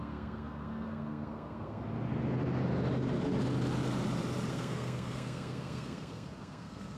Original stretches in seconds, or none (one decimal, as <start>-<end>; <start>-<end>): 1.8-4.5